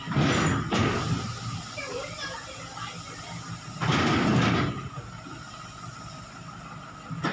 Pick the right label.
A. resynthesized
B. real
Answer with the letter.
B